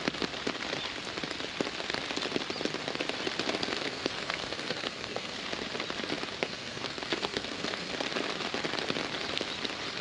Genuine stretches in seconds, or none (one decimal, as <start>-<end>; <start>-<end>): 0.0-3.6; 5.4-6.4; 7.9-10.0